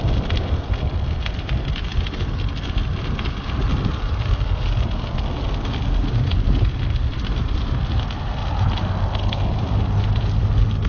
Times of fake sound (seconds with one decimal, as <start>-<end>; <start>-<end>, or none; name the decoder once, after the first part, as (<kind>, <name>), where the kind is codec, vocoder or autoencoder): 0.0-1.9 (vocoder, BigVGAN v2); 7.1-8.4; 9.3-10.9

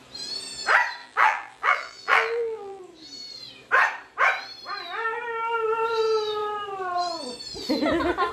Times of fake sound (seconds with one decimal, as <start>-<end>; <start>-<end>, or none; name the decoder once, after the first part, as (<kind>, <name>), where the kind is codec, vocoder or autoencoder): 1.0-2.8 (vocoder, BigVGAN v2)